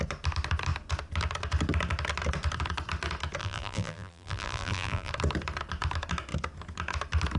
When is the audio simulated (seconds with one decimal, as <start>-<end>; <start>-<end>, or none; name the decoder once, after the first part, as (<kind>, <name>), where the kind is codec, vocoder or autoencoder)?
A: 3.4-5.1 (vocoder, BigVGAN v2)